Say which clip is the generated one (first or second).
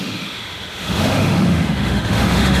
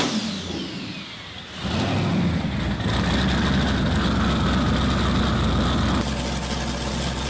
first